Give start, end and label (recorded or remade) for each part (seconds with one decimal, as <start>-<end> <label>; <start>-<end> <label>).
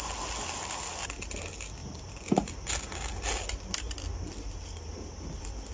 0.0-5.7 recorded